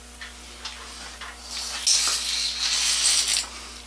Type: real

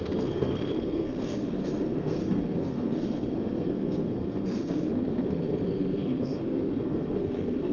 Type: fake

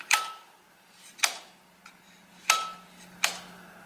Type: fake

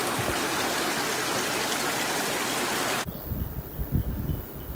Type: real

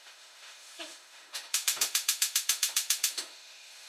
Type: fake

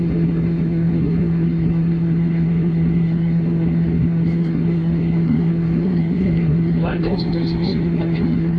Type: fake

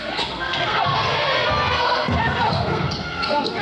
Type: fake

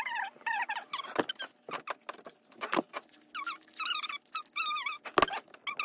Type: real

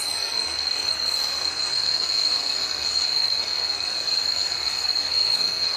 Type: fake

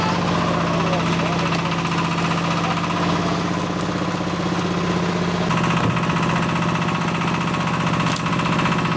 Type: real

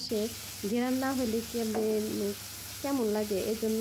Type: real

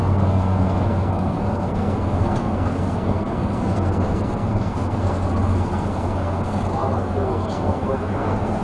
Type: fake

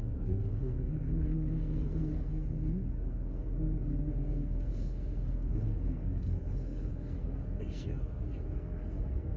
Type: fake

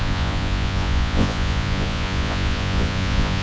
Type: fake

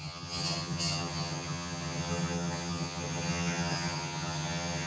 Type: fake